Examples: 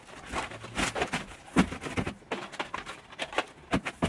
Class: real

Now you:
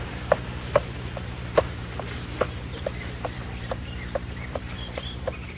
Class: fake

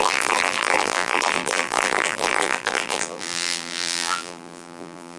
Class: fake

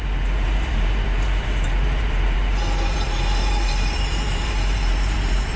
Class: fake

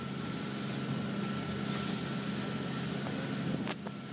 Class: real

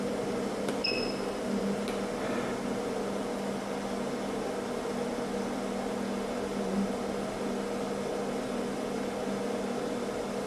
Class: real